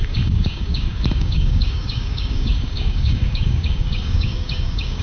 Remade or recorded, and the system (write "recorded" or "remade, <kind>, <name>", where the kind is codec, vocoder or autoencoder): remade, codec, DAC